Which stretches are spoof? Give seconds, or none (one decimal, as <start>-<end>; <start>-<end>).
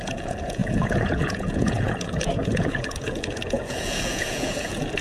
0.0-5.0